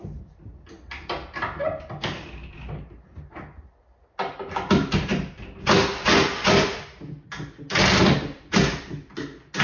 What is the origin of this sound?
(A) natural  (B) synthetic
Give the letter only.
A